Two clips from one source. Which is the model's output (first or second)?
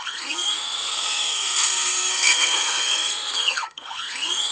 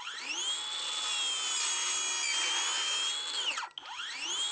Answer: first